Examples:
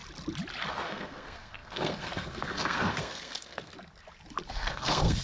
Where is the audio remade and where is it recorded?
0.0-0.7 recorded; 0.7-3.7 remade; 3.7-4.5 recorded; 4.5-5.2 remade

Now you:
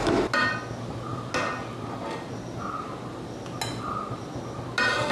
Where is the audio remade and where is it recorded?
0.0-5.1 recorded

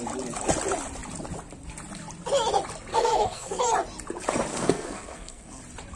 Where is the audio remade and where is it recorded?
0.0-2.9 recorded; 2.9-3.6 remade; 3.6-4.5 recorded; 4.5-5.6 remade; 5.6-6.0 recorded

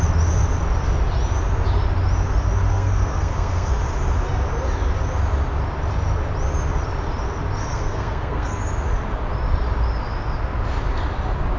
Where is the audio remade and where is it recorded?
0.0-2.7 recorded; 2.7-3.7 remade; 3.7-7.6 recorded; 7.6-8.6 remade; 8.6-11.6 recorded